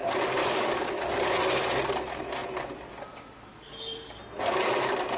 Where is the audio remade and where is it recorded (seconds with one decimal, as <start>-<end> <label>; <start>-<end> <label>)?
0.0-0.4 recorded; 0.4-1.1 remade; 1.1-3.5 recorded; 3.5-4.2 remade; 4.2-5.2 recorded